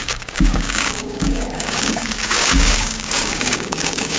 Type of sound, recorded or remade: remade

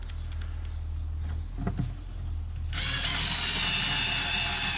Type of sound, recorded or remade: recorded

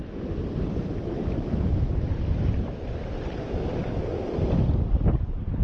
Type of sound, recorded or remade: remade